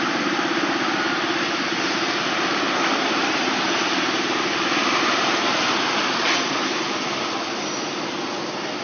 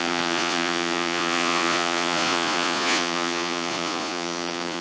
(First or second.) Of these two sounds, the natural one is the first